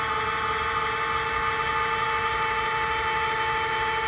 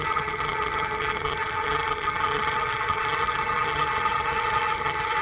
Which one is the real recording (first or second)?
first